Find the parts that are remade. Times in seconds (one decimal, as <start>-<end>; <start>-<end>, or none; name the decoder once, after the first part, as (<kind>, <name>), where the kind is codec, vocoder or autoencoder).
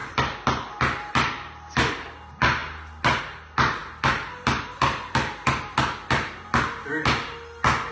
none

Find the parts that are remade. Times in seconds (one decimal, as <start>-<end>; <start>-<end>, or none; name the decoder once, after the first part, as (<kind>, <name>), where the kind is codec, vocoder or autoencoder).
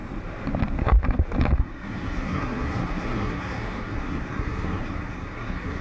1.6-5.8 (codec, SNAC)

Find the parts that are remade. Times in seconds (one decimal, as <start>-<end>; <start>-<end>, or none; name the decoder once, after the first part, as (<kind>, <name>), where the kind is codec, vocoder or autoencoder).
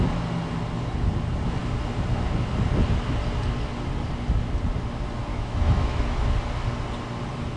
5.3-6.3 (autoencoder, DAC-VAE)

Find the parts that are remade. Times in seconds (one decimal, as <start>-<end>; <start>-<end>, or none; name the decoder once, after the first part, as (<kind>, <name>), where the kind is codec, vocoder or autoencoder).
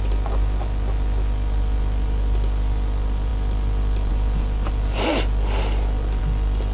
none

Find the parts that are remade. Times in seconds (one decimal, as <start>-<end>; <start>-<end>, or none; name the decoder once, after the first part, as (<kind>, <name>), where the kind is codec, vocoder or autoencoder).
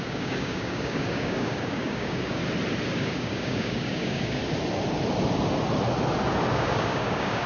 0.0-2.4 (codec, DAC); 2.9-4.4; 6.5-7.5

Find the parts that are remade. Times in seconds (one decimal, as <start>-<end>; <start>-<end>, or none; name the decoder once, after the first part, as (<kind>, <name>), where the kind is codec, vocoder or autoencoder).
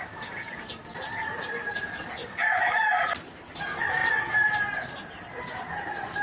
0.0-0.5 (codec, DAC); 2.2-2.8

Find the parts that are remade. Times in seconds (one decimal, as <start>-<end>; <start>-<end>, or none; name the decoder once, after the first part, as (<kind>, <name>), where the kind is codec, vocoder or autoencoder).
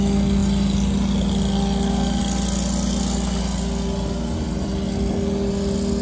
none